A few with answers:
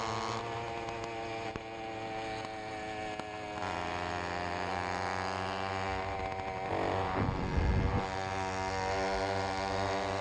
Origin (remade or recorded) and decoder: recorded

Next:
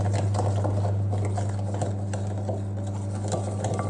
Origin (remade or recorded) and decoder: recorded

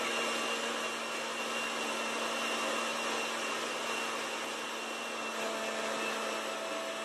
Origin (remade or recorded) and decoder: recorded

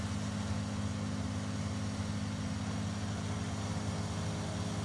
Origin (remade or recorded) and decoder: recorded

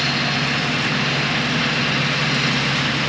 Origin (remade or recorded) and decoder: recorded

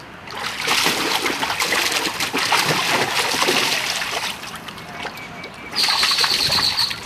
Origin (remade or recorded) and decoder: recorded